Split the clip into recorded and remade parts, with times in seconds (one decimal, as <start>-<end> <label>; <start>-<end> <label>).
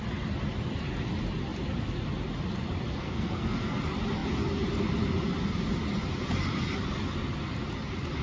0.0-3.0 recorded; 3.0-3.8 remade; 3.8-8.2 recorded